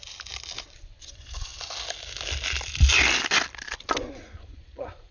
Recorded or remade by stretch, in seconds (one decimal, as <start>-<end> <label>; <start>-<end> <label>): 0.0-0.8 recorded; 0.8-1.5 remade; 1.5-4.0 recorded; 4.0-5.1 remade